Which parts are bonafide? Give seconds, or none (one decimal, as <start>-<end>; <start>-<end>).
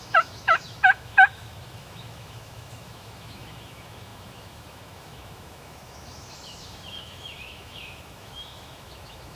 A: none